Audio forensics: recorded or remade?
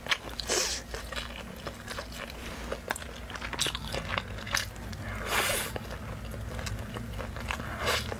recorded